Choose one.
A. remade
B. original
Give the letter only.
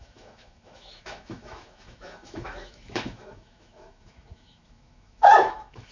A